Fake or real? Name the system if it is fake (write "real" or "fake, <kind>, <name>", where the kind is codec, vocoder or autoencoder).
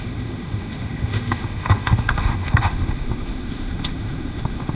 fake, autoencoder, DAC-VAE